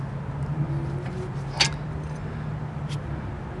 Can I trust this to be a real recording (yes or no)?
yes